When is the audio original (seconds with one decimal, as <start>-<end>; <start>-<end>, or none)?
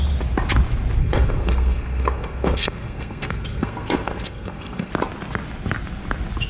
0.0-1.0; 4.9-6.5